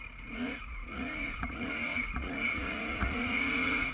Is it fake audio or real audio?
fake